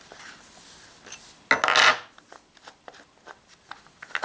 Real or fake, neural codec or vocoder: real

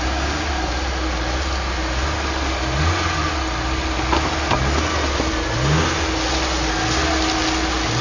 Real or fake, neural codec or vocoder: real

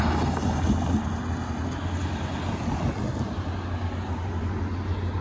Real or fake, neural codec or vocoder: real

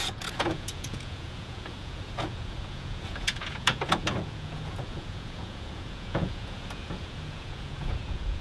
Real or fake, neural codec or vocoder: fake, vocoder, Vocos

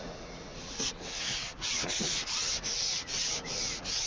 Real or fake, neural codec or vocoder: fake, vocoder, Vocos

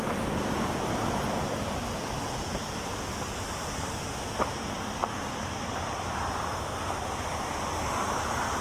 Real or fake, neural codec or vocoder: real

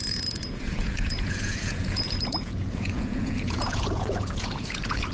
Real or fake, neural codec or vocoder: fake, vocoder, Vocos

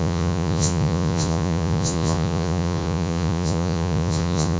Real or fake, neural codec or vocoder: fake, vocoder, Vocos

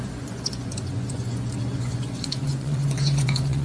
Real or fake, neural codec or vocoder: fake, vocoder, Vocos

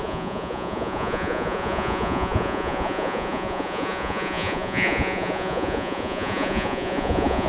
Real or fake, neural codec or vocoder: fake, vocoder, Vocos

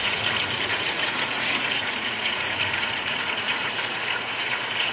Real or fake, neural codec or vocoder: fake, vocoder, Vocos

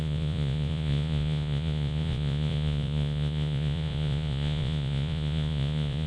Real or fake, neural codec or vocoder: fake, vocoder, Vocos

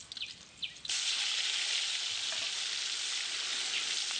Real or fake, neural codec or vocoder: real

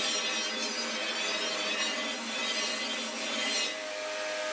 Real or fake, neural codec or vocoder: real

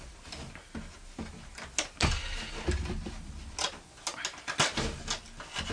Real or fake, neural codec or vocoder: real